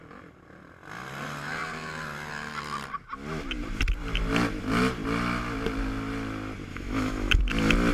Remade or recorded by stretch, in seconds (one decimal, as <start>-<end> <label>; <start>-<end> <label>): 0.0-6.7 recorded; 6.7-7.4 remade; 7.4-7.9 recorded